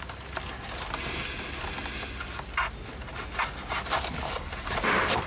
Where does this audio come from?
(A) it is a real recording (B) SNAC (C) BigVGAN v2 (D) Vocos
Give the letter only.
A